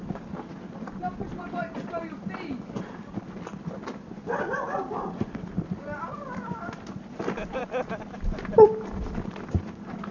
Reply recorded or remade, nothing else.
recorded